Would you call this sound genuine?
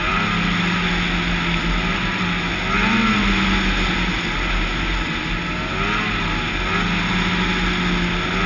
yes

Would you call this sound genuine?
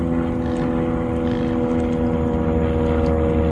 yes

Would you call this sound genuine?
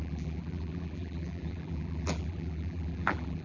no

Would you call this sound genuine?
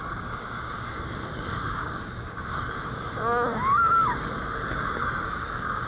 no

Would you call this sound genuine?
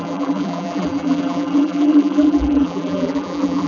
no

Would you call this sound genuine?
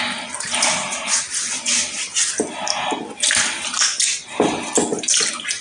yes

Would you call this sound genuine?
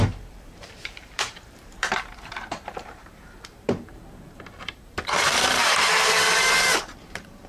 no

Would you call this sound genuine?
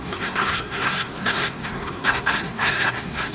no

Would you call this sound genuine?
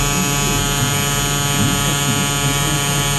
yes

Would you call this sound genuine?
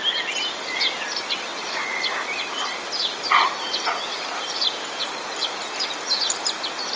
yes